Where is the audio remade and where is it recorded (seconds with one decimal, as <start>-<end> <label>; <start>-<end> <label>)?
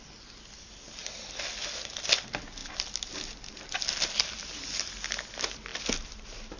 0.0-6.6 recorded